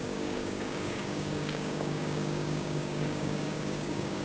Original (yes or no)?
no